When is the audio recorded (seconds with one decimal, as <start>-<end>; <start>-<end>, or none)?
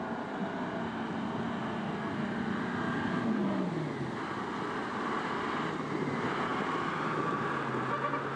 0.0-8.4